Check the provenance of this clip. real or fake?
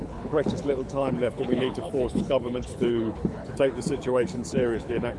fake